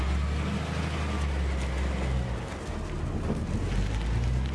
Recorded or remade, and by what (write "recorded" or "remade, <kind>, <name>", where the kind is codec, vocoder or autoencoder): recorded